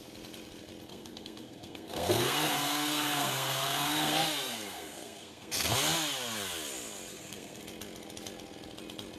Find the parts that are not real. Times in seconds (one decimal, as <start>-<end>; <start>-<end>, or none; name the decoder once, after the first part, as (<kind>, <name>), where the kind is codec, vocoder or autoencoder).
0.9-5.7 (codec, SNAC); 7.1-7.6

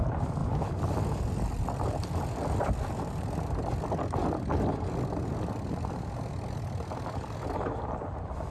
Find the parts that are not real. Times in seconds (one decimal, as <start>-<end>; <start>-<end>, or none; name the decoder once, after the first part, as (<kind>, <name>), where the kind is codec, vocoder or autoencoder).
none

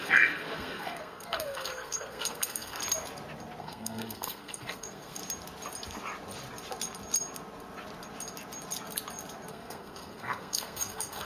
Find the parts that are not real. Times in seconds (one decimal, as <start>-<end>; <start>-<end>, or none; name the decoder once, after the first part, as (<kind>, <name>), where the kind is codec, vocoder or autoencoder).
0.0-2.8 (codec, SNAC); 3.6-5.2; 9.5-11.2